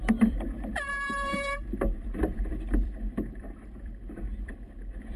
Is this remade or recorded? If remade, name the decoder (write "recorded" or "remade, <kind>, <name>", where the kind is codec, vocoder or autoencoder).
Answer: remade, vocoder, BigVGAN v2